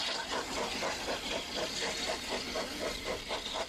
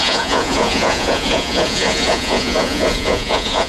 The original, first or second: first